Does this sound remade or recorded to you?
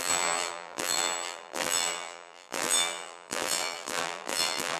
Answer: remade